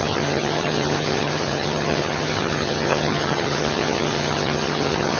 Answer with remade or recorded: remade